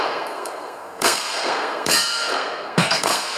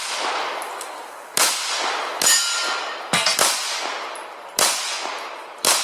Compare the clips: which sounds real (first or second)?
second